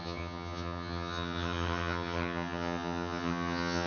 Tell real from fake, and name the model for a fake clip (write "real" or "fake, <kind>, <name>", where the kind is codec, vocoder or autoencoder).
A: fake, vocoder, HiFi-GAN